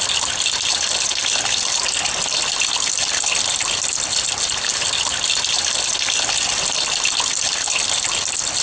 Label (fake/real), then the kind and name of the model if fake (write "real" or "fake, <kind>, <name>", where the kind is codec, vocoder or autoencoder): real